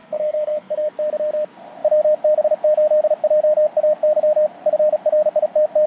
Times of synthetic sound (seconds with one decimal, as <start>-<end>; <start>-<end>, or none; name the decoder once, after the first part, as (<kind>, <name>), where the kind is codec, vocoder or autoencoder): 0.0-0.9 (codec, SNAC)